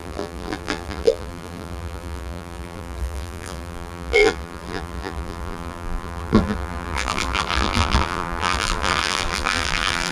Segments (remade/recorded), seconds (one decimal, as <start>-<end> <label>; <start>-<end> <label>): 0.0-10.1 remade